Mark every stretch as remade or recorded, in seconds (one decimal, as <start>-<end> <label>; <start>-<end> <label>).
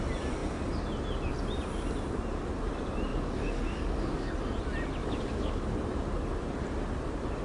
0.0-3.1 recorded; 3.1-4.3 remade; 4.3-5.0 recorded; 5.0-5.6 remade; 5.6-7.4 recorded